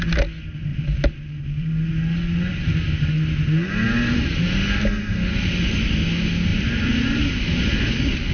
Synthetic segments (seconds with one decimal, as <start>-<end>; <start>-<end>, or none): 0.7-1.9; 6.5-7.3